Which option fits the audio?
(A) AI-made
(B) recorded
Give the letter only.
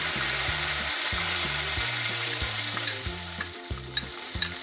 A